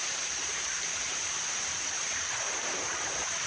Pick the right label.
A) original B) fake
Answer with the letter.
B